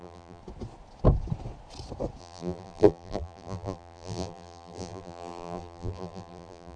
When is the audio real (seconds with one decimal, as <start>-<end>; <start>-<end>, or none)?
0.4-2.2